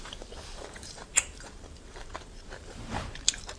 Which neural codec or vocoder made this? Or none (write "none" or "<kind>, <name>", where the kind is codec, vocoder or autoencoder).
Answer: vocoder, BigVGAN v2